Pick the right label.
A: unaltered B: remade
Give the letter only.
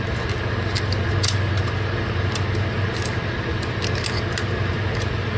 A